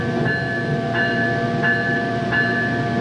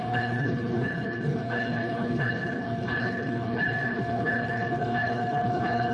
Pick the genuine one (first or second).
first